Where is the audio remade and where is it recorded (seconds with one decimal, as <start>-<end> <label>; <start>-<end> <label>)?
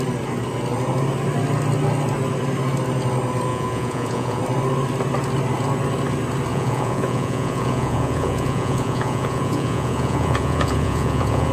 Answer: 0.0-3.5 recorded; 3.5-4.4 remade; 4.4-6.5 recorded; 6.5-11.5 remade